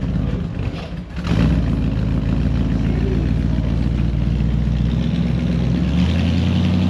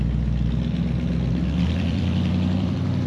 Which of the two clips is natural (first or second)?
first